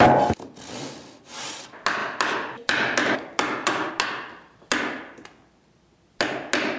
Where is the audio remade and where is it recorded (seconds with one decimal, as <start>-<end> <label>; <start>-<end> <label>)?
0.0-6.8 recorded